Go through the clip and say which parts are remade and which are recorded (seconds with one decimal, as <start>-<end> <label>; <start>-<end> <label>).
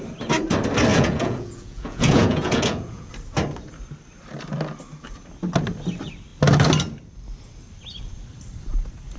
0.0-0.9 recorded; 0.9-3.1 remade; 3.1-9.2 recorded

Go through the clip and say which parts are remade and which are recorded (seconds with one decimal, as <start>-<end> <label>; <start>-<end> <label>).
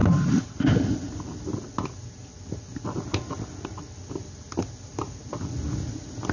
0.0-6.3 recorded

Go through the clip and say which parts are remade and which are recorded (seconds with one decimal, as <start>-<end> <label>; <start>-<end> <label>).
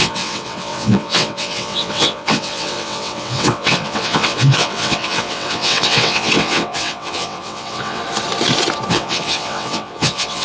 0.0-8.0 remade; 8.0-8.9 recorded; 8.9-10.4 remade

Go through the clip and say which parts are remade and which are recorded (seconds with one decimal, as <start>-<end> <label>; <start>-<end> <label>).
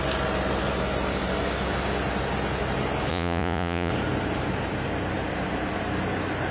0.0-3.1 recorded; 3.1-3.9 remade; 3.9-6.5 recorded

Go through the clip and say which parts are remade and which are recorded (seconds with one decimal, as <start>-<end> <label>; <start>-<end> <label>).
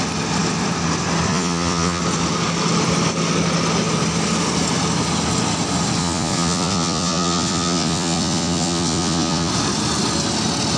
0.0-1.3 recorded; 1.3-2.0 remade; 2.0-6.0 recorded; 6.0-9.5 remade; 9.5-10.8 recorded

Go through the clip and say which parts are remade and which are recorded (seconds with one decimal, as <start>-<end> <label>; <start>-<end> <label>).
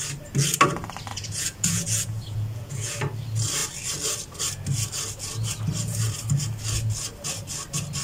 0.0-1.1 recorded; 1.1-3.0 remade; 3.0-8.0 recorded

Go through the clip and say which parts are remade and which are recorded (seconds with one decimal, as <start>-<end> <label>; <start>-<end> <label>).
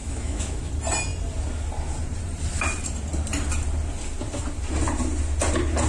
0.0-0.7 remade; 0.7-5.9 recorded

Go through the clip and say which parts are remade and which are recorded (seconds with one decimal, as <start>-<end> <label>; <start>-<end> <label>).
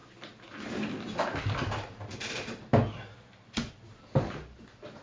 0.0-5.0 recorded